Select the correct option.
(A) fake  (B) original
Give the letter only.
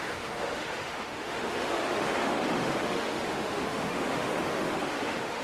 A